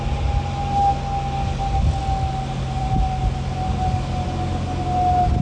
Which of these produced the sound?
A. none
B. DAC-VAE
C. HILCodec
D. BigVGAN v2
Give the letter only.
A